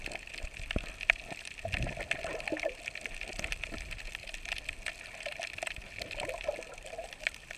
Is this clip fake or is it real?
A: real